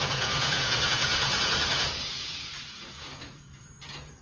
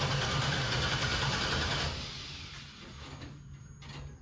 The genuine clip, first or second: second